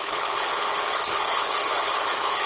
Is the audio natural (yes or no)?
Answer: no